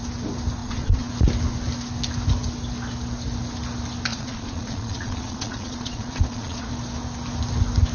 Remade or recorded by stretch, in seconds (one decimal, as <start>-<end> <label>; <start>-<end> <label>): 0.0-0.6 recorded; 0.6-1.1 remade; 1.1-4.1 recorded; 4.1-6.7 remade; 6.7-7.9 recorded